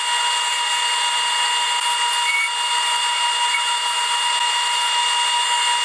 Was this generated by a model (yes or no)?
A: no